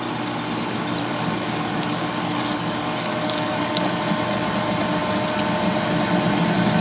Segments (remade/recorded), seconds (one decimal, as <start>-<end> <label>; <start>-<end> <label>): 0.0-1.0 recorded; 1.0-3.9 remade; 3.9-6.8 recorded